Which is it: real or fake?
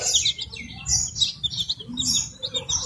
real